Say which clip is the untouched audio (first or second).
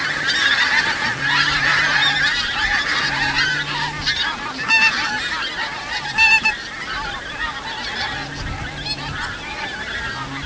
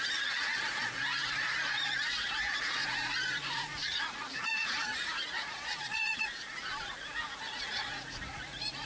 first